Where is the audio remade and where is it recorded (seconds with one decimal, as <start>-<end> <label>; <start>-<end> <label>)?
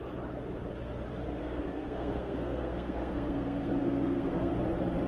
0.0-1.4 recorded; 1.4-4.5 remade; 4.5-5.1 recorded